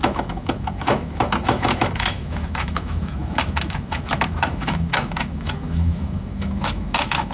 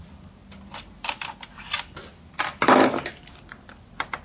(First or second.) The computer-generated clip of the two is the first